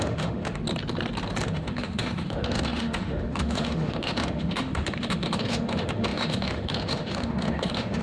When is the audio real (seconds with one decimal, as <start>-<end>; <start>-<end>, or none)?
0.6-1.4